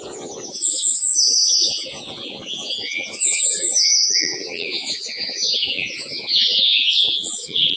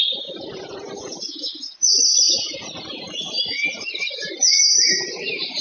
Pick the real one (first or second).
second